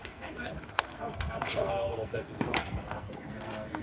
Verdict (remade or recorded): remade